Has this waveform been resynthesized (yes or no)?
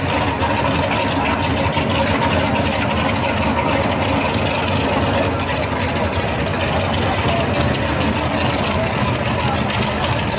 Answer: no